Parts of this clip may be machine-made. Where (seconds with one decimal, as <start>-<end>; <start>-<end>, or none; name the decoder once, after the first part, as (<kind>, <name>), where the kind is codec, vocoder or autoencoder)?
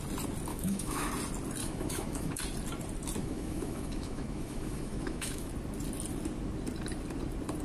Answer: 0.5-1.1 (autoencoder, DAC-VAE); 1.6-2.4; 3.2-5.5